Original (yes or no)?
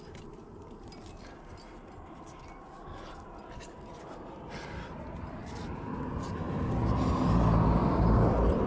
yes